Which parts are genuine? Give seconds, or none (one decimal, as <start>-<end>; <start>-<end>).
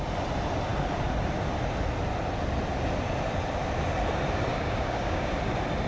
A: 0.0-4.5; 5.3-5.9